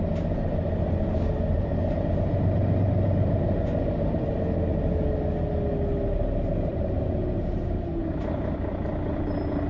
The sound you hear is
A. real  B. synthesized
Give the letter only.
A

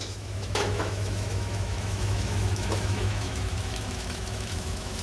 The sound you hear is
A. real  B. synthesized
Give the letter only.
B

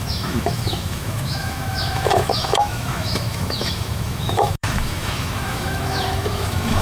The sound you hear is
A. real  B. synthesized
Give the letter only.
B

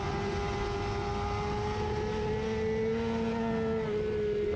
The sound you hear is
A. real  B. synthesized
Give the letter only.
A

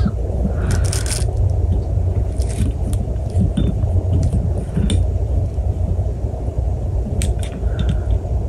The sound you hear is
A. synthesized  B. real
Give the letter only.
B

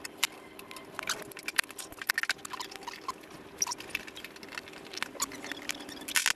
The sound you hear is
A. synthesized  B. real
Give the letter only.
B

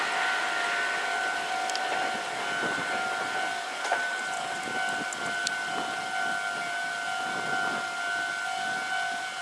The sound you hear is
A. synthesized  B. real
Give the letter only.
B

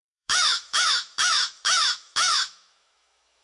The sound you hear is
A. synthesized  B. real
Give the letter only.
A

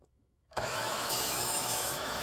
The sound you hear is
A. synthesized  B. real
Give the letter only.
A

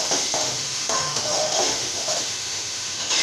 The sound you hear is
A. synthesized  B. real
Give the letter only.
A